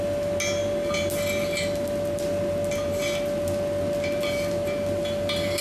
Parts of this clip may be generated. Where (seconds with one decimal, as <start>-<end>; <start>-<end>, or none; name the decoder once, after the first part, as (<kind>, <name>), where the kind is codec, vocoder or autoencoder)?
none

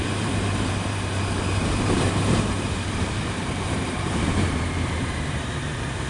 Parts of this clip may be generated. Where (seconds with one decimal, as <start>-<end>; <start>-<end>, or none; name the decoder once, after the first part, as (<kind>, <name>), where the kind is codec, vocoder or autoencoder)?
0.0-6.1 (vocoder, BigVGAN v2)